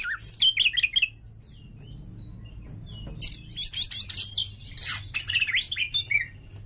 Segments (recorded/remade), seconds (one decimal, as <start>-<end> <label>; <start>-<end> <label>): 0.0-6.7 recorded